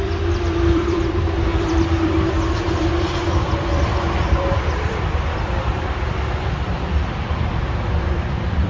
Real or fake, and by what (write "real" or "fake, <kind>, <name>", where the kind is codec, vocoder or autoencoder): fake, vocoder, BigVGAN v2